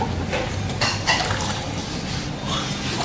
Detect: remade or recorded recorded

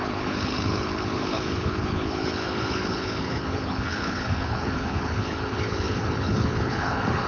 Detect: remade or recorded remade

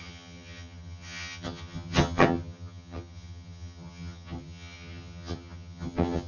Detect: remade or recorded remade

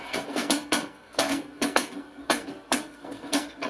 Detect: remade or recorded remade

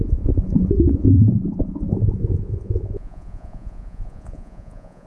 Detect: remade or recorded remade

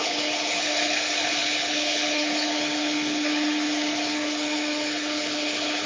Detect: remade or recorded remade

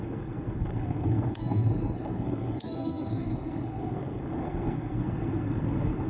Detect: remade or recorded remade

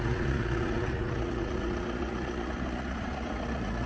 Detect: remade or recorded remade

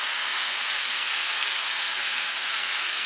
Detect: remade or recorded remade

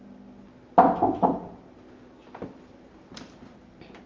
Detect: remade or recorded recorded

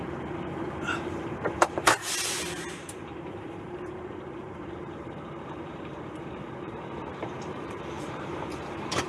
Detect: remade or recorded remade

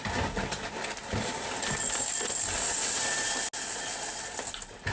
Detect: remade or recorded recorded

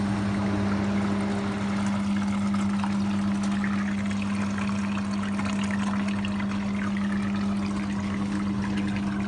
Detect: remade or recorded recorded